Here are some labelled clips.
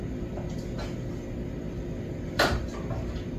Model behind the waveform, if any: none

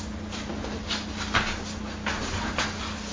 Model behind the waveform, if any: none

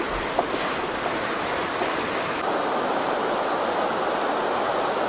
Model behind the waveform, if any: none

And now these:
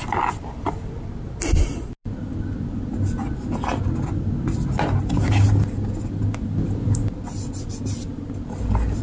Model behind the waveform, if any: none